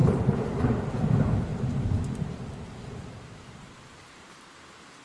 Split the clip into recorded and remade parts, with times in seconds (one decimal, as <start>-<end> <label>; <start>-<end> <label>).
0.0-0.9 remade; 0.9-1.5 recorded; 1.5-4.5 remade; 4.5-5.0 recorded